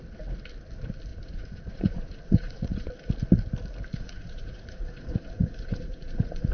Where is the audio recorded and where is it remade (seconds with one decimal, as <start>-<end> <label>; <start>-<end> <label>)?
0.0-1.1 recorded; 1.1-2.9 remade; 2.9-3.9 recorded; 3.9-6.5 remade